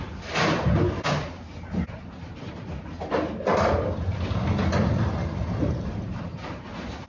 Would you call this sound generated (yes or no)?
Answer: no